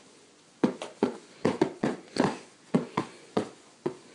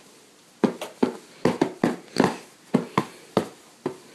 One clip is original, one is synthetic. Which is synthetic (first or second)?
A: first